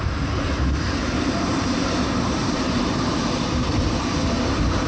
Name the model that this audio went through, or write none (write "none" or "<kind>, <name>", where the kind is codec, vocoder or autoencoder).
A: vocoder, BigVGAN v2